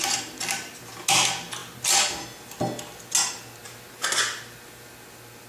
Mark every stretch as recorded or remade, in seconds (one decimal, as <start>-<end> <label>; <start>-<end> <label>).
0.0-5.5 recorded